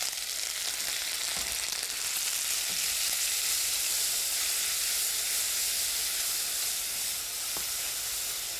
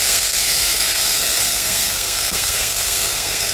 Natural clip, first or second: first